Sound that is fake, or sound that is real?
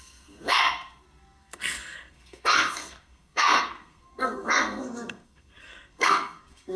fake